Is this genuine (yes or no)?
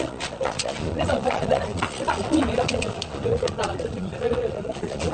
no